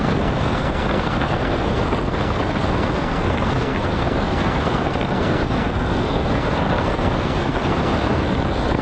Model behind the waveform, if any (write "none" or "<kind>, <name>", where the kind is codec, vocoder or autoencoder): codec, SNAC